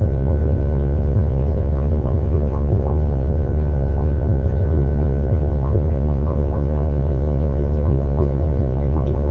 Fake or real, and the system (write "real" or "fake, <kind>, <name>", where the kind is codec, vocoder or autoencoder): fake, vocoder, Vocos